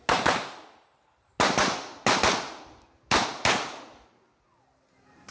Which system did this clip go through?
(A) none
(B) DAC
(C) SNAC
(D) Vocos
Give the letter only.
A